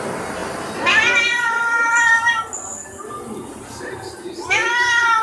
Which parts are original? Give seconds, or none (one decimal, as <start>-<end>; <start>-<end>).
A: 0.0-3.4; 4.3-5.2